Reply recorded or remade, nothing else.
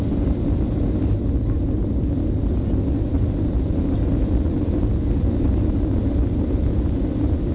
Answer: recorded